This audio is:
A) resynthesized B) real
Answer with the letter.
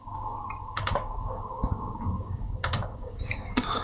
A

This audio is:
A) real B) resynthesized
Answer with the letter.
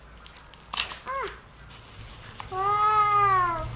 A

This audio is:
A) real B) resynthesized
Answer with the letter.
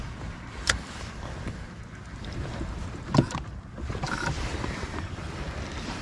A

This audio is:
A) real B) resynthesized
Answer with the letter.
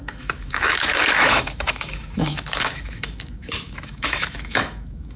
B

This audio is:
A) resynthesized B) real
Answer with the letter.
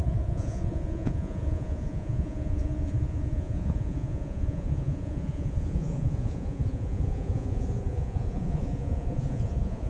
A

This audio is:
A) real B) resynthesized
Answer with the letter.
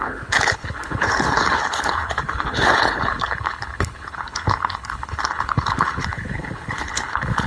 B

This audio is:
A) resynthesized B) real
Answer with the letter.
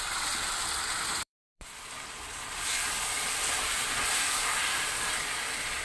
A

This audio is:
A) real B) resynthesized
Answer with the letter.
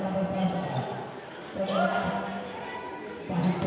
A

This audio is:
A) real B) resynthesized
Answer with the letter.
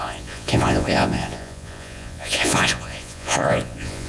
B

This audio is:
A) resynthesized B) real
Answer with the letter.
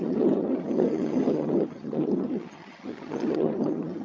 A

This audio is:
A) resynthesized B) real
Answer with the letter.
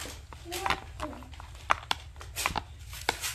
B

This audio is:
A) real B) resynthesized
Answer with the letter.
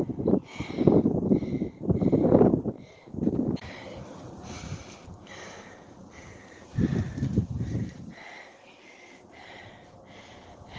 B